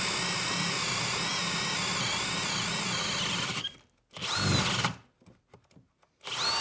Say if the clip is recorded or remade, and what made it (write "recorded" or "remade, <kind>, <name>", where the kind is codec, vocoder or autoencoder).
recorded